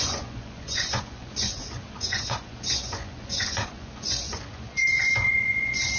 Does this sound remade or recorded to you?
remade